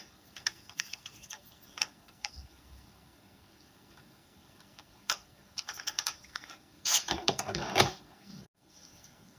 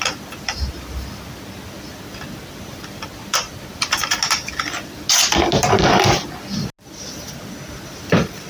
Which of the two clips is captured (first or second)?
second